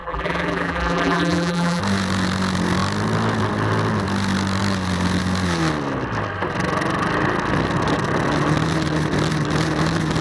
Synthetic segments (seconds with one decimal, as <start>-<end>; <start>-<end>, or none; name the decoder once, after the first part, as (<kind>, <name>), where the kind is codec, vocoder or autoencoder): 0.0-1.8 (vocoder, BigVGAN v2)